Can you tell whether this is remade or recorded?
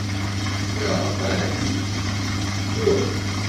remade